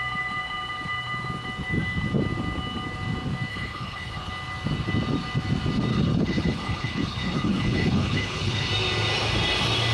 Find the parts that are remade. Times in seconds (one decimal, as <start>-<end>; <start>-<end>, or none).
3.5-4.3; 5.9-8.7

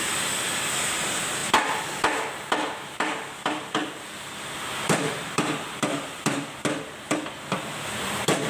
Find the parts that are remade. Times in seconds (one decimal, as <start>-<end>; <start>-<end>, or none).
0.0-1.4; 2.9-8.5

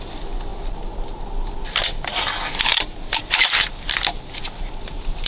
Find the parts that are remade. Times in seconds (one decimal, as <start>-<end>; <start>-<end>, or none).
none

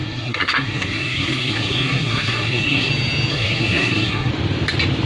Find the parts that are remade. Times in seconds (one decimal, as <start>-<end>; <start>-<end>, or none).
0.0-2.9; 3.3-4.3

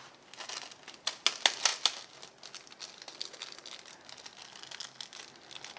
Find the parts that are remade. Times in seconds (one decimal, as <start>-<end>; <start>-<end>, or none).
none